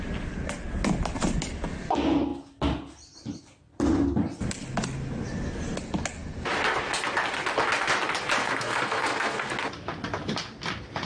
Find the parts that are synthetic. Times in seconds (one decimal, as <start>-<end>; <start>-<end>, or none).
8.4-9.5